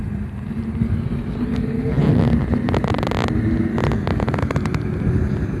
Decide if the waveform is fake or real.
real